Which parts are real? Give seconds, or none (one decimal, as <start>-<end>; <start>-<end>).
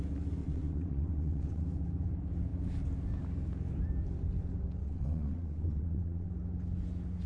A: 0.0-0.4; 1.6-4.8; 6.3-7.3